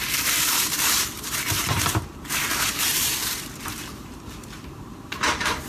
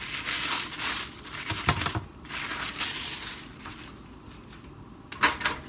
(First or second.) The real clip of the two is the second